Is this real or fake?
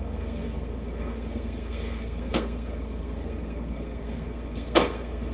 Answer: fake